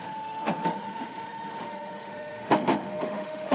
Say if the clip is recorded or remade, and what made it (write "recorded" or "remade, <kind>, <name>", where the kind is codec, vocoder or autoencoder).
remade, autoencoder, DAC-VAE